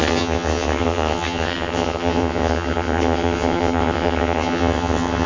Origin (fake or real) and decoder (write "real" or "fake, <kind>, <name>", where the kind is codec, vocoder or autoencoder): fake, vocoder, HiFi-GAN